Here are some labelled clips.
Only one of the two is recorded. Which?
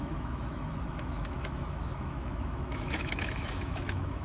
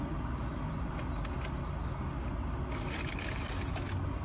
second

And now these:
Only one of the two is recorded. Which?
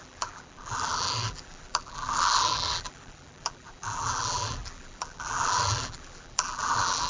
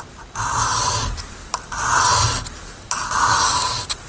second